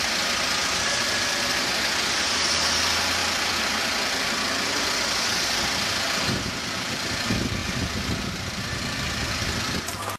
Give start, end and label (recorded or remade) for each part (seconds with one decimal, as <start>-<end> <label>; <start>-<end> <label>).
0.0-3.2 recorded; 3.2-6.3 remade; 6.3-7.6 recorded; 7.6-9.6 remade; 9.6-10.2 recorded

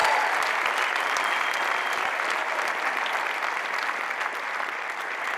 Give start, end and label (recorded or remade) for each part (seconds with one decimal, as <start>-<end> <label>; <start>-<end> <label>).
0.0-5.4 recorded

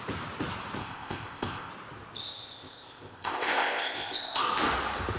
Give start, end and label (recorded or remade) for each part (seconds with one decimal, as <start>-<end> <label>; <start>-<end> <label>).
0.0-0.8 recorded; 0.8-1.7 remade; 1.7-2.2 recorded; 2.2-4.4 remade; 4.4-5.2 recorded

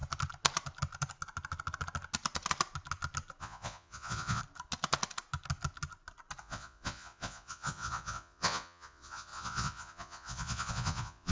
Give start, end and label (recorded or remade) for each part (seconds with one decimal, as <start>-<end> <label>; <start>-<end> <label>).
0.0-3.4 recorded; 3.4-4.4 remade; 4.4-6.4 recorded; 6.4-11.3 remade

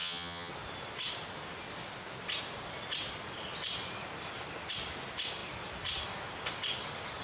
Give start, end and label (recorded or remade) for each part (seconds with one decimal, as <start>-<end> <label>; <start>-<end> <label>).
0.0-0.5 remade; 0.5-7.2 recorded

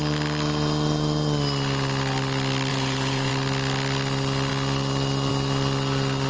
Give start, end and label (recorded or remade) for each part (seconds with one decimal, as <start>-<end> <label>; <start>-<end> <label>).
0.0-2.7 recorded; 2.7-3.3 remade; 3.3-6.3 recorded

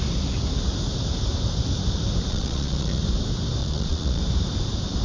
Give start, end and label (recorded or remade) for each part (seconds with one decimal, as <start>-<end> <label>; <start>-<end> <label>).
0.0-2.3 recorded; 2.3-3.0 remade; 3.0-3.6 recorded; 3.6-4.2 remade; 4.2-5.0 recorded

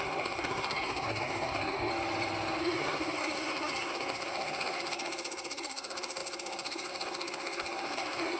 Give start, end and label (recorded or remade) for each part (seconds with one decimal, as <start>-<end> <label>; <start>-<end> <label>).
0.0-1.9 remade; 1.9-2.6 recorded; 2.6-8.4 remade